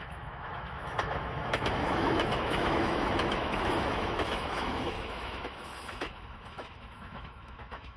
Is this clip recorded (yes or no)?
no